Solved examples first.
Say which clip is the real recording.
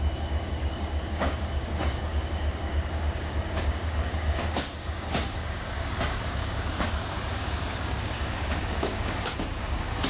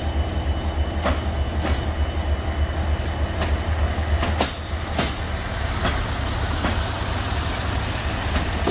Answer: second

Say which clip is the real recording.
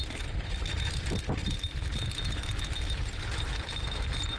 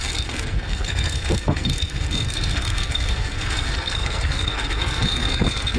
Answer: first